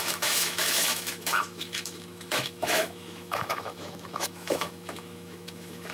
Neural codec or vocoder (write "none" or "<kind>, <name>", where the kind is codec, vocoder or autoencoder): autoencoder, DAC-VAE